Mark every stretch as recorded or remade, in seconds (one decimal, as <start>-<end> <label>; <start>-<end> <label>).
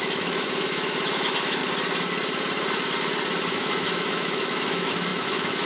0.0-1.6 remade; 1.6-3.5 recorded; 3.5-5.7 remade